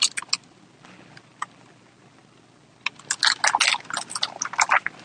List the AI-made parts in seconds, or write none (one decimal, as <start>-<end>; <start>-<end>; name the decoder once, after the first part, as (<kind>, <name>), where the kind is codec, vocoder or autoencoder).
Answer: none